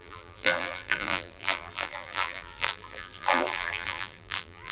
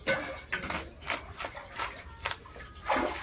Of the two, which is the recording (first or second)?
second